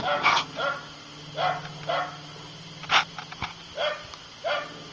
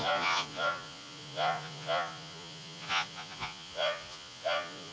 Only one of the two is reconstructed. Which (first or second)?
second